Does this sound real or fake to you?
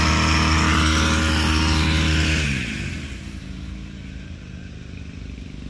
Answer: real